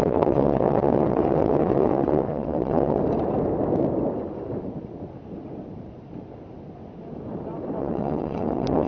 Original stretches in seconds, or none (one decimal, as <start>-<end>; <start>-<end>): 3.0-7.8